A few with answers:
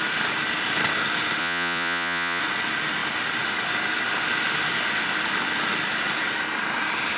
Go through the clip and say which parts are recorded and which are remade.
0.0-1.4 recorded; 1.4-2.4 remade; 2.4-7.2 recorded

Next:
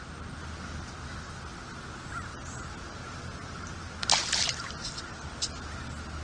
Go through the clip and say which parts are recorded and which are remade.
0.0-6.2 recorded

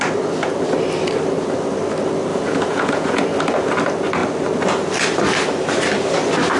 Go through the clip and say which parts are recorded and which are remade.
0.0-2.3 recorded; 2.3-3.2 remade; 3.2-6.6 recorded